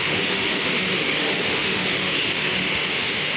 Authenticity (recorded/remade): remade